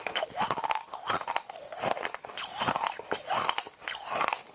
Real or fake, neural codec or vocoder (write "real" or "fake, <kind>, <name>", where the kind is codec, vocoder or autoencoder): real